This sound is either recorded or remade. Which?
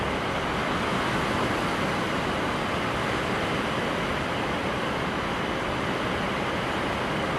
recorded